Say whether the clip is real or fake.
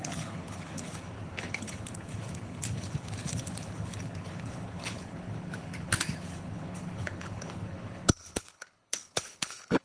fake